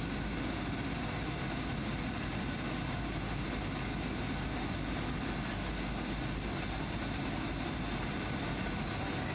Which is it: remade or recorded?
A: recorded